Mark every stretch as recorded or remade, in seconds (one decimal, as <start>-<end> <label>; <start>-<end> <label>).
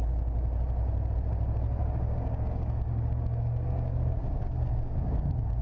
0.0-1.8 recorded; 1.8-5.6 remade